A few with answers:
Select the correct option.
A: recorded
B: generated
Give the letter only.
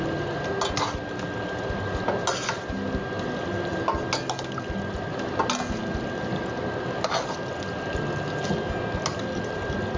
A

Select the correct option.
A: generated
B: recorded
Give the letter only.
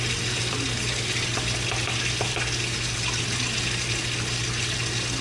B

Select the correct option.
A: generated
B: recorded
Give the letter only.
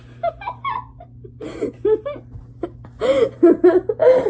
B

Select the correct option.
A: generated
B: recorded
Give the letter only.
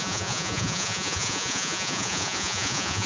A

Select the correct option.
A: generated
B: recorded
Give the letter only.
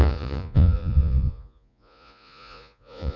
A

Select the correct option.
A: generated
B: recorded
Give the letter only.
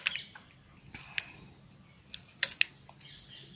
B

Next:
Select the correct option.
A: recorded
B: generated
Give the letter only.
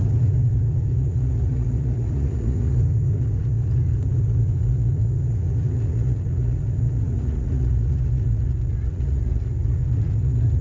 B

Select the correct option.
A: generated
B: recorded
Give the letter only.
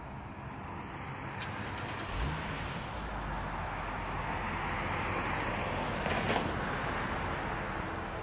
B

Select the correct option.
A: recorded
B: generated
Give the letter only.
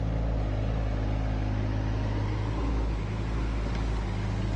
A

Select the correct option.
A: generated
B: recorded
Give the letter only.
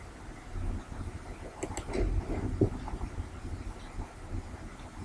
B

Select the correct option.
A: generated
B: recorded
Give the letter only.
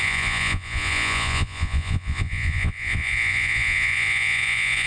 A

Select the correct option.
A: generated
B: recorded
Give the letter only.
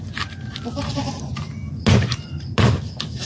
B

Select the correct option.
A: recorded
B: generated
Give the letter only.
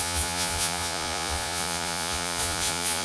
B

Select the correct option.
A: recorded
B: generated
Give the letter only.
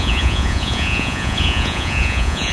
B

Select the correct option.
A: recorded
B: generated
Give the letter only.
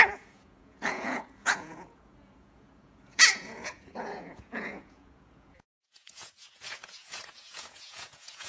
B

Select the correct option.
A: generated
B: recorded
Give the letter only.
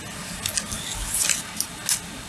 B